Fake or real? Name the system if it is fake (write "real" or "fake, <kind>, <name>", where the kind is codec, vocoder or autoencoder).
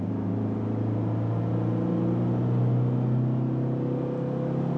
real